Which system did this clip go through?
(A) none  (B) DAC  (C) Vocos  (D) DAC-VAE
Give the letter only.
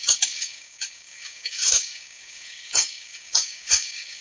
B